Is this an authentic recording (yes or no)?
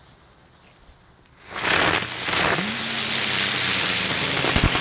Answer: yes